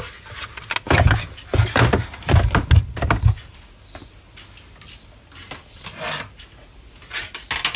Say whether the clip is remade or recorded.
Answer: recorded